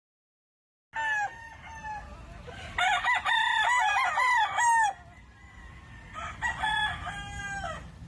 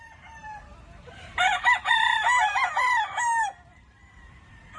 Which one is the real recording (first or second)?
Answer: first